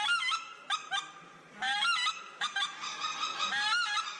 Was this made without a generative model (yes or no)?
yes